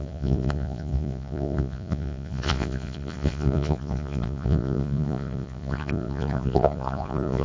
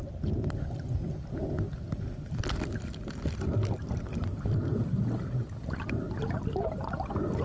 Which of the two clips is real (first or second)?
second